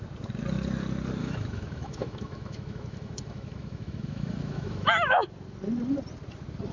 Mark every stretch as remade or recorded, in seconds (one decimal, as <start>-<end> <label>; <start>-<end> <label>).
0.0-1.2 recorded; 1.2-5.2 remade; 5.2-6.7 recorded